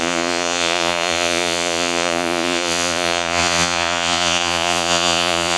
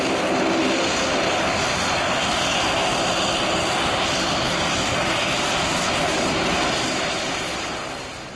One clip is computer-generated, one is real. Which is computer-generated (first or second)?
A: first